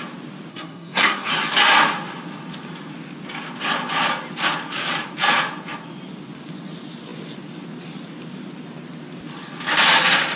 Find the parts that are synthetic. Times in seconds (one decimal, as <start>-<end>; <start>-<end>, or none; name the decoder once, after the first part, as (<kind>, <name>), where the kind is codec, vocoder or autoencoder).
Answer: 0.5-1.3 (codec, SNAC)